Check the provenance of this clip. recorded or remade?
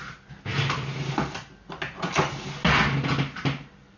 recorded